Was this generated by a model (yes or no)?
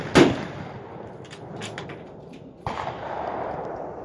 no